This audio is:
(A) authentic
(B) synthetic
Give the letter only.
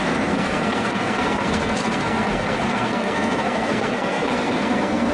B